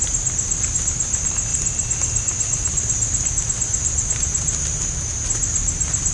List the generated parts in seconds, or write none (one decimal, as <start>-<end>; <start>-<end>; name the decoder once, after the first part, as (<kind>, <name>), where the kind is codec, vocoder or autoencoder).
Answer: none